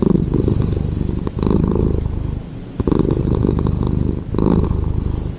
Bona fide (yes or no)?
yes